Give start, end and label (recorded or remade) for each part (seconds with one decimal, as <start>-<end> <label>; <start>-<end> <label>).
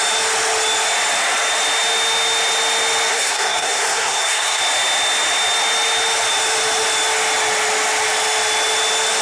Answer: 0.0-3.1 recorded; 3.1-4.6 remade; 4.6-9.2 recorded